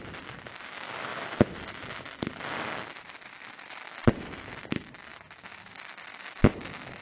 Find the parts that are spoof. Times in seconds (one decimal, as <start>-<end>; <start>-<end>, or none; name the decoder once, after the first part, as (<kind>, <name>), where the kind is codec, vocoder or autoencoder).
none